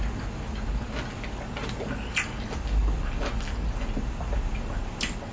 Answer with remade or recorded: recorded